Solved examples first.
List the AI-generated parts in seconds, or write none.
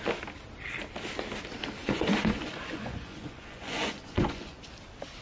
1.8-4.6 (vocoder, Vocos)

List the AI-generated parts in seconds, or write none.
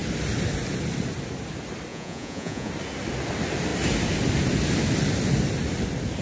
1.9-2.7 (vocoder, Vocos)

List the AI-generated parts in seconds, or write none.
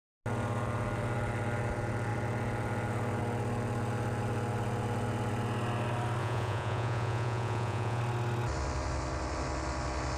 6.2-8.0 (vocoder, Vocos)